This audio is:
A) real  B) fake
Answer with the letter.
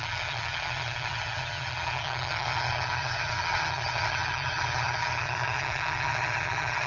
B